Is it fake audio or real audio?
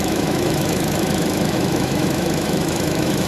fake